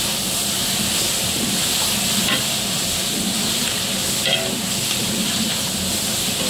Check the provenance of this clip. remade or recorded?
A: recorded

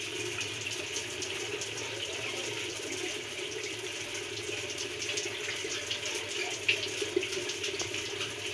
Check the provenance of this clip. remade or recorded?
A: recorded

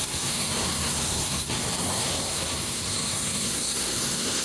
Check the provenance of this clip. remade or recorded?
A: remade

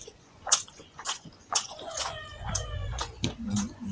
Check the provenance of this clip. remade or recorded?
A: remade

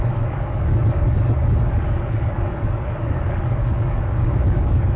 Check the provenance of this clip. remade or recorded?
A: remade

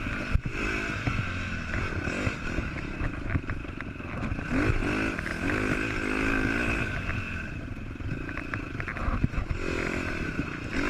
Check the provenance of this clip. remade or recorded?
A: recorded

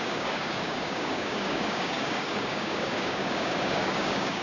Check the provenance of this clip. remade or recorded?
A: remade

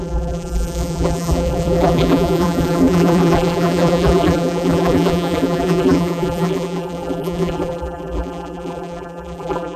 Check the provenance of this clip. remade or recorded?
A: remade